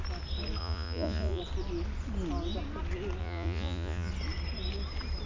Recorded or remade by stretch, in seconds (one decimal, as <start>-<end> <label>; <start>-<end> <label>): 0.0-0.6 recorded; 0.6-1.4 remade; 1.4-3.2 recorded; 3.2-4.1 remade; 4.1-5.3 recorded